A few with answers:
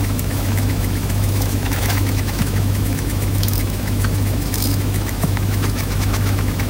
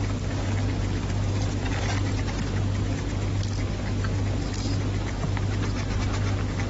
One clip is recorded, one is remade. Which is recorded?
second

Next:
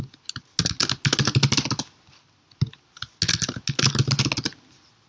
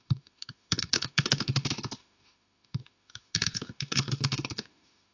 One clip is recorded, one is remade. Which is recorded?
first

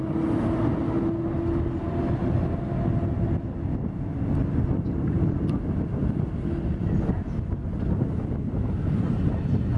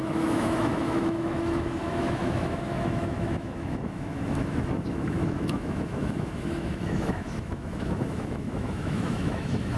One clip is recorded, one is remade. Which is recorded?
first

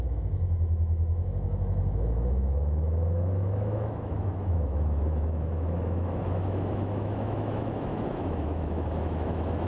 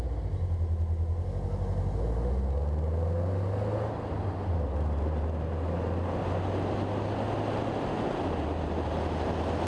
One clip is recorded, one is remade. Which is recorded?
second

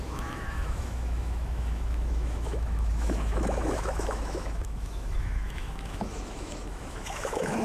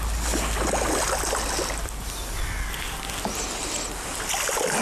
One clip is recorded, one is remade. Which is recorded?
second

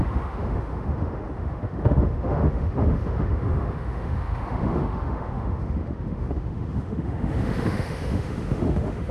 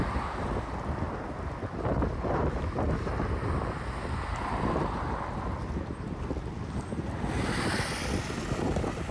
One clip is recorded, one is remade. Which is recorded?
second